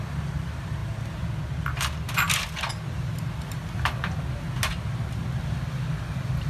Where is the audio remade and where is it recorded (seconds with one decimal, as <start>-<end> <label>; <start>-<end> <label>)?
0.0-6.5 recorded